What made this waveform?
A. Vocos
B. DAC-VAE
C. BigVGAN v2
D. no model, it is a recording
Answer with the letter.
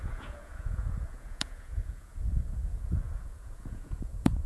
A